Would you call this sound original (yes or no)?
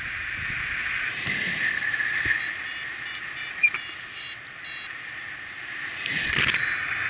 yes